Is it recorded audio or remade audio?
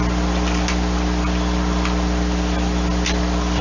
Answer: recorded